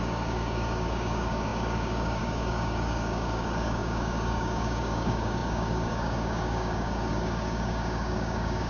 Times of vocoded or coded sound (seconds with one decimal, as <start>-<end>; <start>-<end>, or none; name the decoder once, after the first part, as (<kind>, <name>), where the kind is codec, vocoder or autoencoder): 0.0-8.7 (codec, DAC)